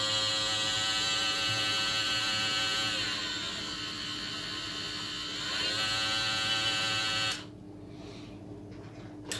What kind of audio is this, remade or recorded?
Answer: recorded